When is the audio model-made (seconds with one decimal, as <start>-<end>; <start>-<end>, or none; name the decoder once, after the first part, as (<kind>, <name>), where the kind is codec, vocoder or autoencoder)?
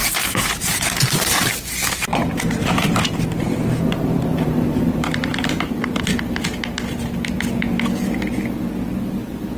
0.0-1.5 (vocoder, BigVGAN v2); 2.1-6.0